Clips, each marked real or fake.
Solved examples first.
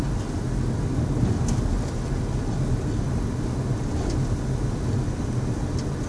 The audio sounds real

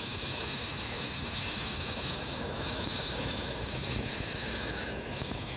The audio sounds fake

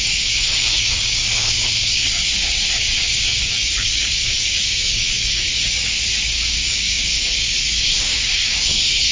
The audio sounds fake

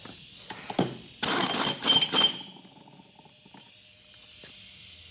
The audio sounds real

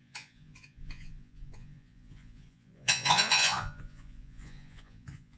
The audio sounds fake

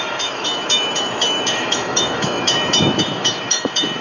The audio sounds fake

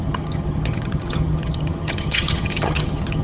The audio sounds fake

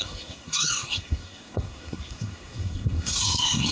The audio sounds fake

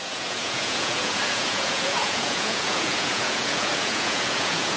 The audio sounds fake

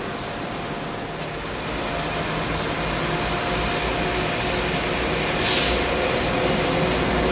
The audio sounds real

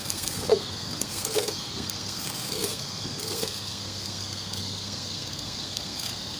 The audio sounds fake